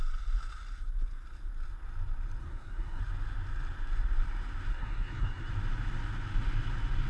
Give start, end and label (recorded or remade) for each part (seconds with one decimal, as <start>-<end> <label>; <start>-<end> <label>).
0.0-2.4 recorded; 2.4-3.0 remade; 3.0-4.7 recorded; 4.7-5.5 remade; 5.5-7.1 recorded

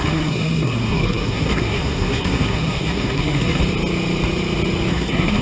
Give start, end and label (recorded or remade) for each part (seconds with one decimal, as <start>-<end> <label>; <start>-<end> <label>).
0.0-3.6 remade; 3.6-4.9 recorded; 4.9-5.4 remade